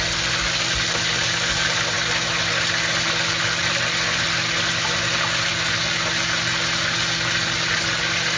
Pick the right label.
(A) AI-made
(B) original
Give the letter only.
B